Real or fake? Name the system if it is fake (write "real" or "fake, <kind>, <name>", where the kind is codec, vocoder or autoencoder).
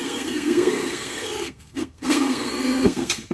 fake, codec, SNAC